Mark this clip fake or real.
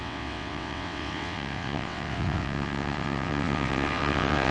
fake